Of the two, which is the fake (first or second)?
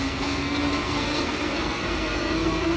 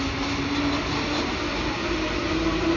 first